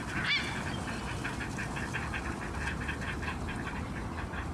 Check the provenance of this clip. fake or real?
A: real